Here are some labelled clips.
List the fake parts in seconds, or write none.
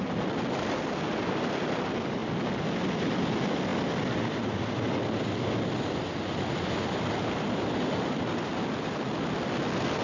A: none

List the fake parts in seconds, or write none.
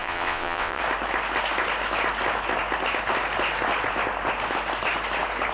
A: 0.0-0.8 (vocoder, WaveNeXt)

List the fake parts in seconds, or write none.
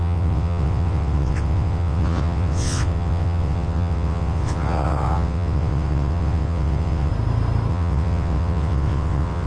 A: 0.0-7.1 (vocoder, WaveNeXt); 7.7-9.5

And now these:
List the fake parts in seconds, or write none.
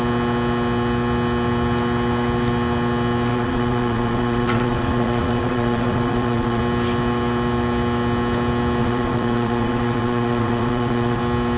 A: 3.3-6.6 (vocoder, WaveNeXt); 8.8-11.2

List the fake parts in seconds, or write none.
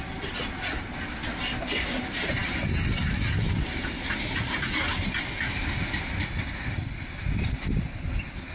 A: none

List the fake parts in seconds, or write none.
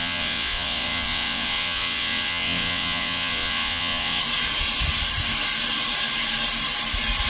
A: 0.0-4.2 (vocoder, WaveNeXt)